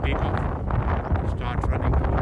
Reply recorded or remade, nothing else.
recorded